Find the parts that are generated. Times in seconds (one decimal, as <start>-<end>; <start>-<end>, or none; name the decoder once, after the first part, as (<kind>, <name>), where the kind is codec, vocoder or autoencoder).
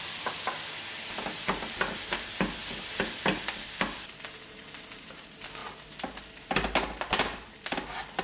none